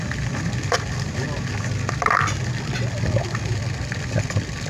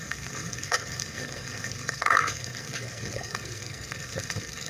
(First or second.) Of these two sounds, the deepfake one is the second